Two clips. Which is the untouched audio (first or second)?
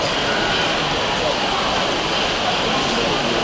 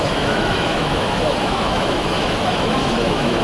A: first